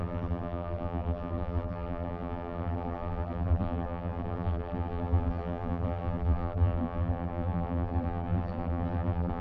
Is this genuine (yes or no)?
no